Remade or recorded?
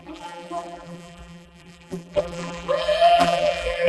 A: remade